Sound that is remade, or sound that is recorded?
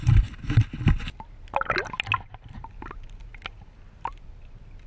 recorded